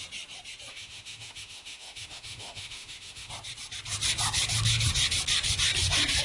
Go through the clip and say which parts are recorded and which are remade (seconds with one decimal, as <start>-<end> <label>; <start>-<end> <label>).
0.0-0.7 recorded; 0.7-3.3 remade; 3.3-6.2 recorded